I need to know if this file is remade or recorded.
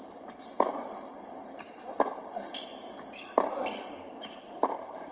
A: remade